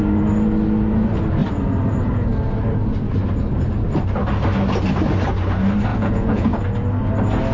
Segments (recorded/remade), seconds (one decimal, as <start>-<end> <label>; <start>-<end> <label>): 0.0-5.9 recorded; 5.9-6.6 remade; 6.6-7.5 recorded